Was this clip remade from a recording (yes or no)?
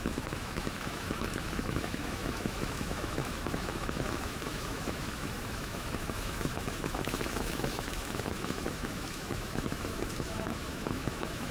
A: yes